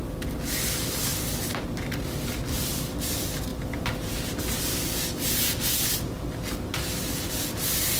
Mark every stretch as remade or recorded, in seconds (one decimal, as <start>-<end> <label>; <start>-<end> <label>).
0.0-8.0 recorded